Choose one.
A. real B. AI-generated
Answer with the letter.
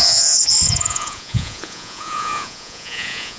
B